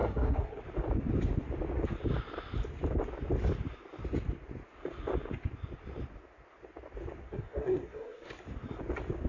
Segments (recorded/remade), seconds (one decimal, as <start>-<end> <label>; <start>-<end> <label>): 0.0-0.6 remade; 0.6-7.2 recorded; 7.2-8.3 remade; 8.3-9.3 recorded

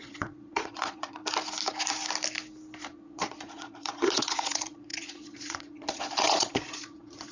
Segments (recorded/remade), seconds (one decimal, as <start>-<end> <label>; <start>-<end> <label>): 0.0-1.2 remade; 1.2-2.8 recorded; 2.8-7.3 remade

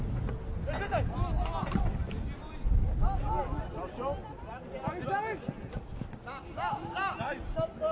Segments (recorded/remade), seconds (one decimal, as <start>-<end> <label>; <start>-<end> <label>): 0.0-7.9 recorded